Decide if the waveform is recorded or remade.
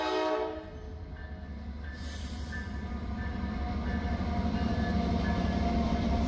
recorded